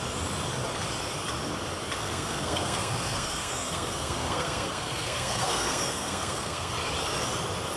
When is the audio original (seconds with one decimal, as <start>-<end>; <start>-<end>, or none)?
0.0-2.0; 6.7-7.8